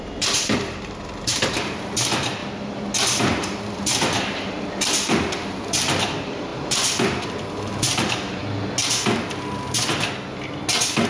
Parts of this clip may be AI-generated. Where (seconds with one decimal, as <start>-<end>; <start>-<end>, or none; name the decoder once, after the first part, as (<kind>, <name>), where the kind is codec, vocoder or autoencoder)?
0.0-2.4 (vocoder, BigVGAN v2); 3.2-8.4